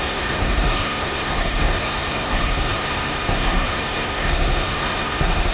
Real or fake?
fake